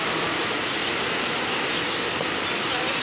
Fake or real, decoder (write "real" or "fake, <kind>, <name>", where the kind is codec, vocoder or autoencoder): real